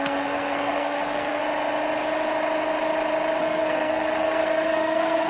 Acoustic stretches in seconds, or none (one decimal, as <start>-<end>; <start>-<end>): 1.4-3.4